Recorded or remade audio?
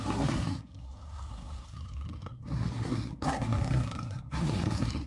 remade